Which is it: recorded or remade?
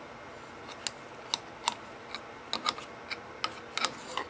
recorded